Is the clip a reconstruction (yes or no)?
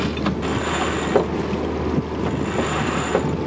no